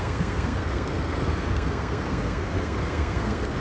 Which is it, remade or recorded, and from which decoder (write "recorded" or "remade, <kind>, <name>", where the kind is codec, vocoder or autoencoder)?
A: remade, codec, SNAC